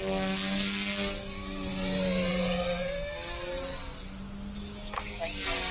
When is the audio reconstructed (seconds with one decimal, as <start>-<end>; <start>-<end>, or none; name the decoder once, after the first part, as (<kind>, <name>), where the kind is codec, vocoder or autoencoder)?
none